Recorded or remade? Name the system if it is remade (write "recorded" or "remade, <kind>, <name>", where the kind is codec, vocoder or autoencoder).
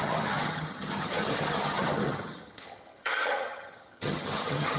remade, vocoder, HiFi-GAN